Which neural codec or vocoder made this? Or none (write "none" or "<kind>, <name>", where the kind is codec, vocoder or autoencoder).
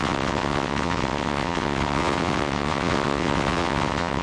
vocoder, WaveNeXt